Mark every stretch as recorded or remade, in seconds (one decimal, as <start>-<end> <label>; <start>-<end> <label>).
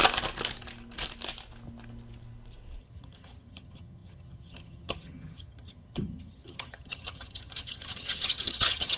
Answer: 0.0-2.8 recorded; 2.8-9.0 remade